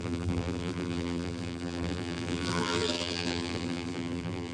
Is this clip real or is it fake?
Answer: fake